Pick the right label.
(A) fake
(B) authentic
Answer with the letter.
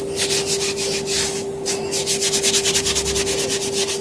B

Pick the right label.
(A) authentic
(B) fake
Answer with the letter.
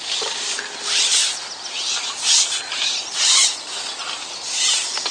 A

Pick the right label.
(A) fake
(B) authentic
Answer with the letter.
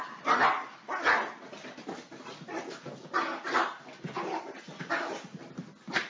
B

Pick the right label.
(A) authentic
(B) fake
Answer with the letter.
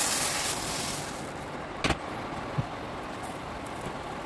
A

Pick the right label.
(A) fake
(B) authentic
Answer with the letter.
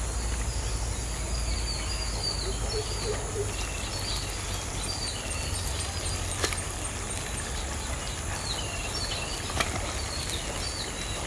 B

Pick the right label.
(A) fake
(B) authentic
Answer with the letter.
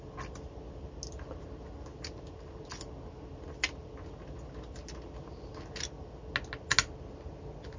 B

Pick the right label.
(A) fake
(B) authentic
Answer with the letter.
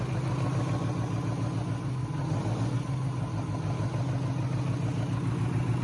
B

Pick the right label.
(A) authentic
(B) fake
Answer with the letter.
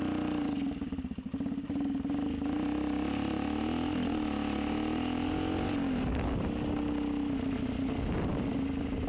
A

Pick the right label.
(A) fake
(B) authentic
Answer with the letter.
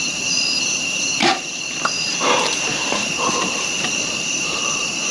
A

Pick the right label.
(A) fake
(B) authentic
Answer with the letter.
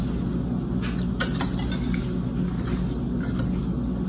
B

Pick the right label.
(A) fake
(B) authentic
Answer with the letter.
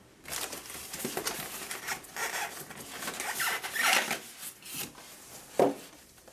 B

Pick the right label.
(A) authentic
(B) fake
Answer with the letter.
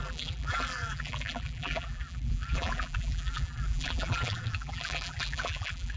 B